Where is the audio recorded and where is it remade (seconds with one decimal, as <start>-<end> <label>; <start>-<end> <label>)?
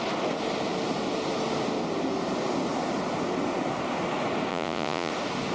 0.0-4.5 recorded; 4.5-5.1 remade; 5.1-5.5 recorded